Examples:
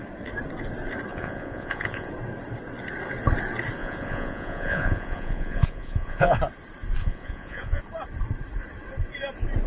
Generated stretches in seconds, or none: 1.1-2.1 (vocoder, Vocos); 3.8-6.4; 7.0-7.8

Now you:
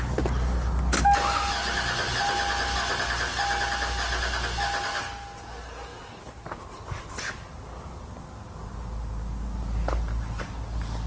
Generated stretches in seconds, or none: none

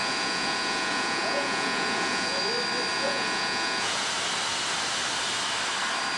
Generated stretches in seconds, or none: 0.0-2.4 (vocoder, Vocos); 2.9-4.0

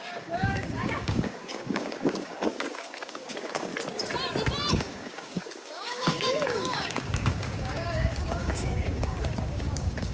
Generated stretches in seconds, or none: 0.0-3.7 (codec, DAC); 4.7-10.1

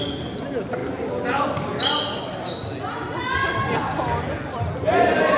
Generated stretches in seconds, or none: none

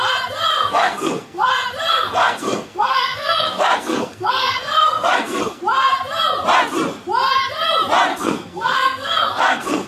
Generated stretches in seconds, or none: 0.5-1.5 (codec, SNAC); 1.9-5.6; 8.1-9.9

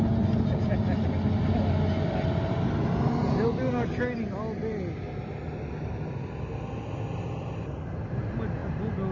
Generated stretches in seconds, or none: none

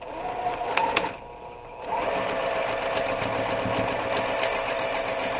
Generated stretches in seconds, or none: none